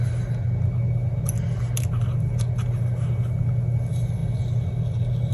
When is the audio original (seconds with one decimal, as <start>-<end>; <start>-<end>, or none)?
0.0-5.3